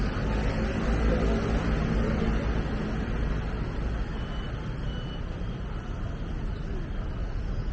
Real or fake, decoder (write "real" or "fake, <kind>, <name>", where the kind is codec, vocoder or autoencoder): real